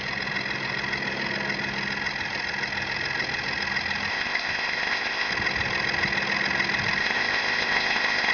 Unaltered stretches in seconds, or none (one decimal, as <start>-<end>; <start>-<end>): 0.0-4.1; 5.3-7.0